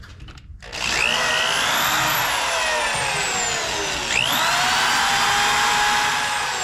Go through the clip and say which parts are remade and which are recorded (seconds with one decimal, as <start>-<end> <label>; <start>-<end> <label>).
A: 0.0-6.6 recorded

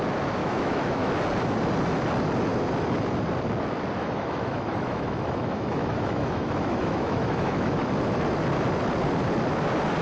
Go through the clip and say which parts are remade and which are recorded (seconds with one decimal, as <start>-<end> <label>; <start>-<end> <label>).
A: 0.0-0.4 recorded; 0.4-1.1 remade; 1.1-4.0 recorded; 4.0-7.9 remade; 7.9-10.0 recorded

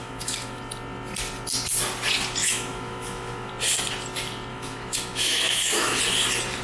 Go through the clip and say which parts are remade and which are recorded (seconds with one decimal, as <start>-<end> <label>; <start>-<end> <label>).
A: 0.0-0.6 remade; 0.6-2.4 recorded; 2.4-3.5 remade; 3.5-4.5 recorded; 4.5-6.0 remade; 6.0-6.6 recorded

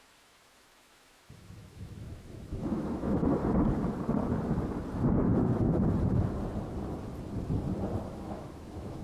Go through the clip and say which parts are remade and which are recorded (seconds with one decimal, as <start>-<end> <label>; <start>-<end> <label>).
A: 0.0-3.4 remade; 3.4-8.1 recorded; 8.1-9.0 remade

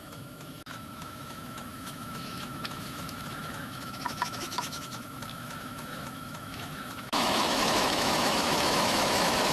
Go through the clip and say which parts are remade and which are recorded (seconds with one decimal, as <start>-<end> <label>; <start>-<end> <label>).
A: 0.0-9.5 remade

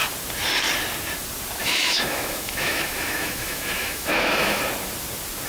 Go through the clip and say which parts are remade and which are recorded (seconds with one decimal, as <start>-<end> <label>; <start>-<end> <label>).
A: 0.0-1.6 recorded; 1.6-4.6 remade; 4.6-5.5 recorded

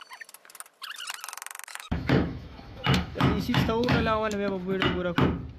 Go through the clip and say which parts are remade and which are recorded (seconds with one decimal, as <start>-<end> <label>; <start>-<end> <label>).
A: 0.0-1.7 recorded; 1.7-4.3 remade; 4.3-5.6 recorded

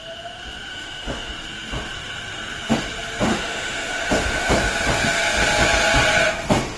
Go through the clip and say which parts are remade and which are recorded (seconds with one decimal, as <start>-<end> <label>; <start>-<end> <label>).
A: 0.0-0.7 recorded; 0.7-1.3 remade; 1.3-3.3 recorded; 3.3-4.5 remade; 4.5-6.8 recorded